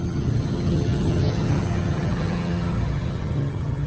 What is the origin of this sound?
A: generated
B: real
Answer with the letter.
A